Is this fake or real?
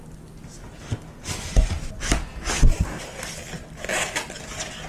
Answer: real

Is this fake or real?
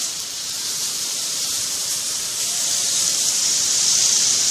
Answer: fake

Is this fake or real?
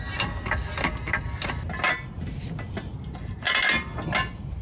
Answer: real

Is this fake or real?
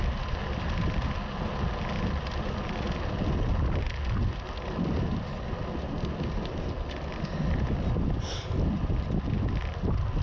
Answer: real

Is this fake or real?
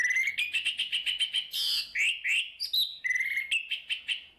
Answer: real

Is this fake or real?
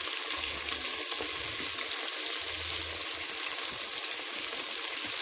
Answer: real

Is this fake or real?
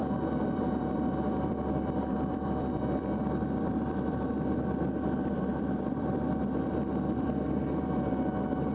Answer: fake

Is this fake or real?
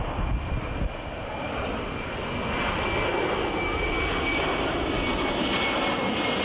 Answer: real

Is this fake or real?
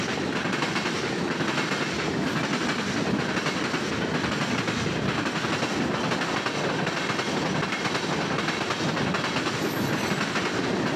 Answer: real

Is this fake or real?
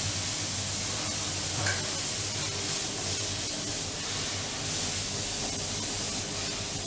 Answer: real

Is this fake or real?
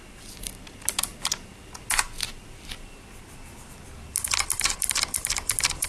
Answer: real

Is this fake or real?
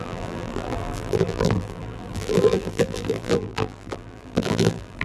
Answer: fake